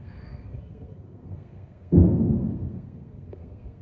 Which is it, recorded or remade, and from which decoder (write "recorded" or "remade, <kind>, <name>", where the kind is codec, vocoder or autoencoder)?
remade, codec, SNAC